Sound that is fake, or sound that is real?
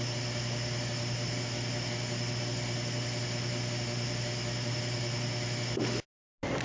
real